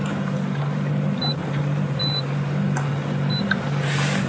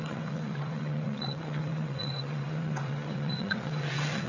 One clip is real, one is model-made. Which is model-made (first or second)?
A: second